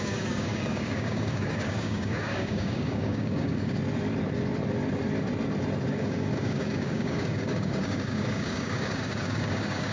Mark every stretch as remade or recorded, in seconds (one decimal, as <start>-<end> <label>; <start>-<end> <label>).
0.0-3.8 remade; 3.8-5.9 recorded; 5.9-9.9 remade